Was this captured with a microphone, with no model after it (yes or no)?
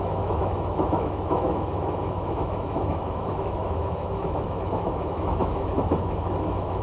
no